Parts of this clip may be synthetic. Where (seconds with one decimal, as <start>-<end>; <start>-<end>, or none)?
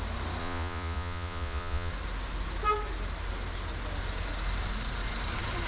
0.4-1.9